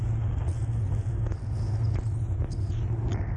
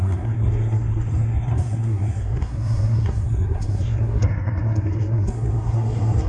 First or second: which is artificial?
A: second